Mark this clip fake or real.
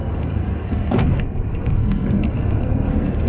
fake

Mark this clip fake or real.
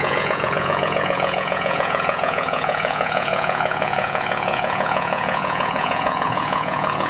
fake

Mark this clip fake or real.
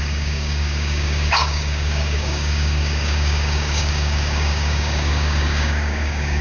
fake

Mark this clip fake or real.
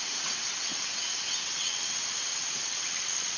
fake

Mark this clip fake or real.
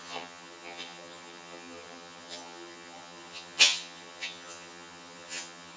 fake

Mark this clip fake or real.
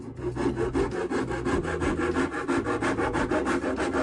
real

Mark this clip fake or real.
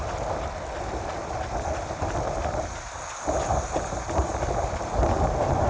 real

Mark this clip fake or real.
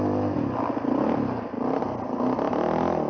real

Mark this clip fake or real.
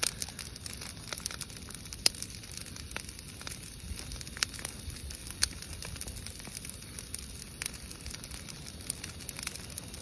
real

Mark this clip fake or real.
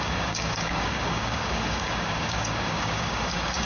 fake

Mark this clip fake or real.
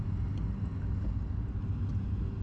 real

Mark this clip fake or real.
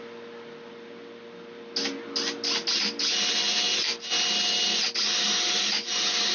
real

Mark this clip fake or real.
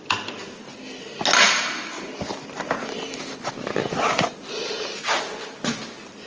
real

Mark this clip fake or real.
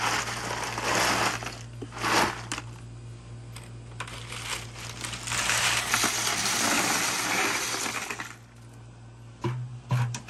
real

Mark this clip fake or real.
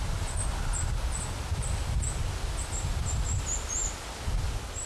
real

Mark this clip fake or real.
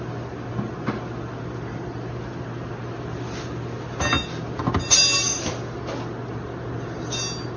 real